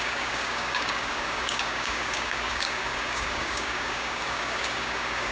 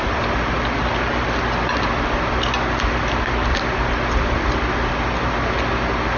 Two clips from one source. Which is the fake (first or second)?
first